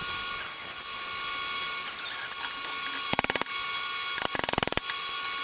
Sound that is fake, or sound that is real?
real